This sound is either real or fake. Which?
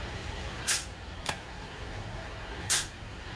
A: fake